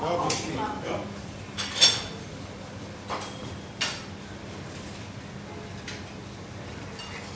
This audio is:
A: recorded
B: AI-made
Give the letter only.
A